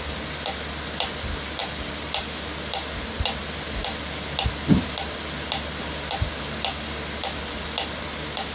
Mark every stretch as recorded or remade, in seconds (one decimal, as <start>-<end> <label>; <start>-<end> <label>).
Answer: 0.0-8.5 recorded